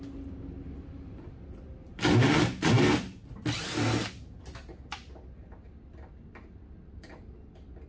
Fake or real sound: real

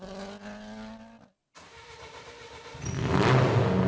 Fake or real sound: real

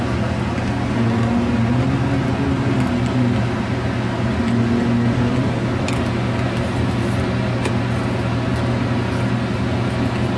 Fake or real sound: real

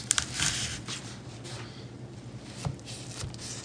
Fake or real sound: real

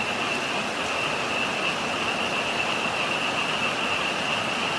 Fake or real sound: real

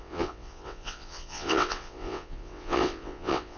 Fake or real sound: fake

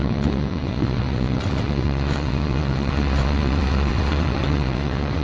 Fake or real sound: fake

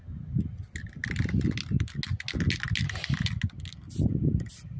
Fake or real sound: real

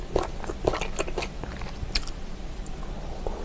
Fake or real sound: real